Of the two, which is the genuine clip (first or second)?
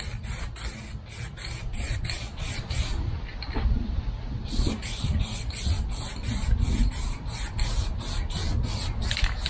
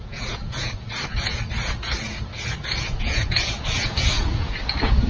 first